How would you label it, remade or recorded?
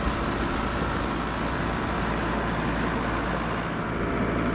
recorded